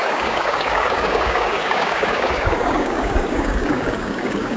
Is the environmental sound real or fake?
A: fake